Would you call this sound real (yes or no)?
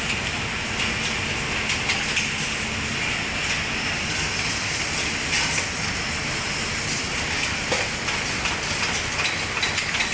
yes